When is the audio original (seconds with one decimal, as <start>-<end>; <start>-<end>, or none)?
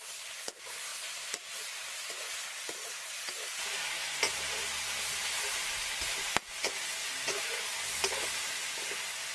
0.0-0.9; 3.5-4.6; 5.2-9.3